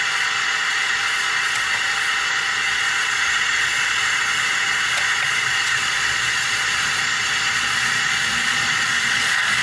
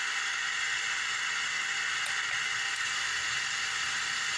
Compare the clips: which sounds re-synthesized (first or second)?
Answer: first